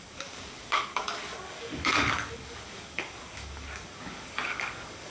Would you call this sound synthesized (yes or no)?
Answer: yes